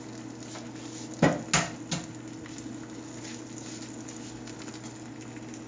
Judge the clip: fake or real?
real